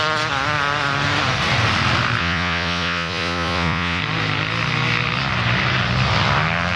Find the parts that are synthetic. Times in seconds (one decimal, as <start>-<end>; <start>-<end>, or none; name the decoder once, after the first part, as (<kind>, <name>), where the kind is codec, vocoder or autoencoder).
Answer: 2.2-4.0 (vocoder, Vocos)